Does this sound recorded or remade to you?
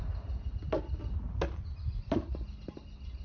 recorded